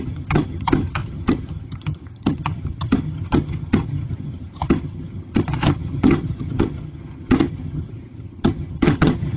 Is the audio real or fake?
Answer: fake